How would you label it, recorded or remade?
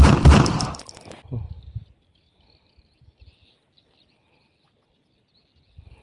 recorded